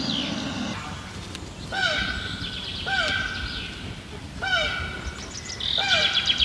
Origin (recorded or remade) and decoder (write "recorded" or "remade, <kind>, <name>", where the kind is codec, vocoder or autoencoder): recorded